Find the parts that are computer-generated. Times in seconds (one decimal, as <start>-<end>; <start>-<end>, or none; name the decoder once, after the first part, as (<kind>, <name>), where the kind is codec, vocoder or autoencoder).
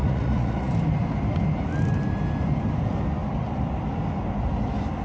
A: 0.0-0.7 (vocoder, Vocos)